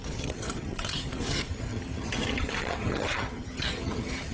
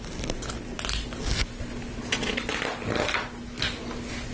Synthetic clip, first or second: first